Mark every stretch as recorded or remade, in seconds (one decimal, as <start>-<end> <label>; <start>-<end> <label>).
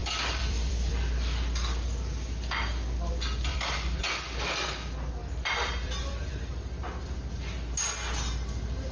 0.0-0.9 remade; 0.9-3.5 recorded; 3.5-4.0 remade; 4.0-5.2 recorded; 5.2-6.3 remade; 6.3-8.9 recorded